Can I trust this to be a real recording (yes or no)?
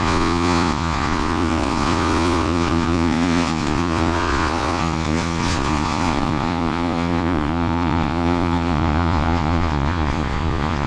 no